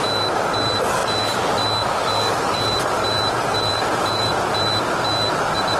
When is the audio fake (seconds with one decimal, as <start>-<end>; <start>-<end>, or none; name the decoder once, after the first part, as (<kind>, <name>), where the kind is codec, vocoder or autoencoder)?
3.7-4.4 (vocoder, Vocos)